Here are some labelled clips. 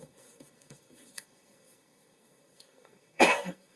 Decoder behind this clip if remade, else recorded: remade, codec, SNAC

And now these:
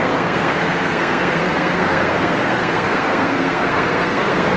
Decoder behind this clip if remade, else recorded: remade, codec, SNAC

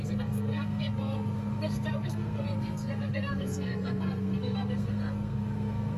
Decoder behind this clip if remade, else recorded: remade, codec, SNAC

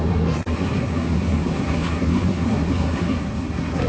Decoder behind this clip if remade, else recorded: remade, codec, SNAC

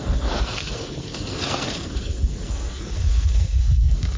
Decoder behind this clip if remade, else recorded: remade, codec, SNAC